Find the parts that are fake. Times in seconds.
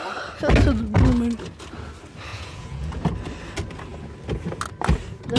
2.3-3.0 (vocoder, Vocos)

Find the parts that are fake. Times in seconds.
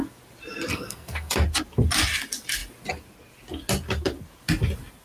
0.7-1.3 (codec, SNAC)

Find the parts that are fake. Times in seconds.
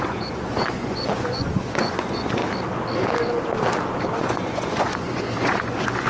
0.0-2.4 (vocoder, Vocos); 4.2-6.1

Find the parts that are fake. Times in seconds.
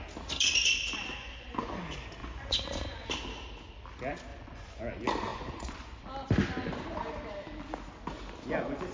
1.2-1.8 (vocoder, Vocos); 2.2-3.1; 4.3-4.8; 5.3-6.0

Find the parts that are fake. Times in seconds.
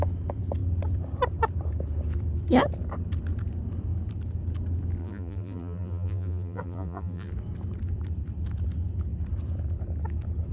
5.0-7.3 (vocoder, BigVGAN v2)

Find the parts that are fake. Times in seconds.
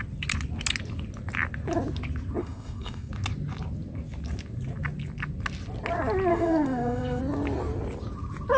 2.4-3.1 (codec, SNAC); 6.3-7.2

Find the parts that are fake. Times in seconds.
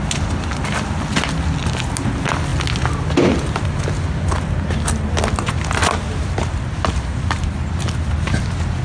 none